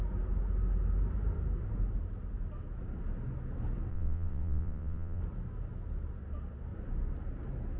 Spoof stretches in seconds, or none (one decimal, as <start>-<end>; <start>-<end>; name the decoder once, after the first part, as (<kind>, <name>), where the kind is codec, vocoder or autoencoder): 3.9-5.2 (vocoder, WaveNeXt)